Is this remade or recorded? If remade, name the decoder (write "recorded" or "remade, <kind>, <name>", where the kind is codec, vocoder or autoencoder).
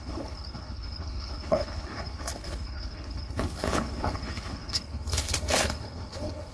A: remade, codec, HILCodec